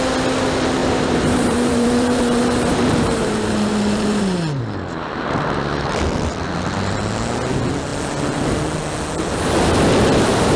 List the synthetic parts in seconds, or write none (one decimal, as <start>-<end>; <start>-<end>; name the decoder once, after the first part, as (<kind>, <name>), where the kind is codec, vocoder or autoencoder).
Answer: 0.8-4.6 (vocoder, BigVGAN v2)